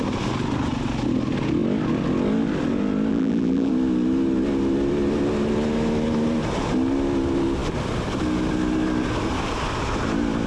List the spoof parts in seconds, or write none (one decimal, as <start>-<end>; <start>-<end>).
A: 3.1-3.7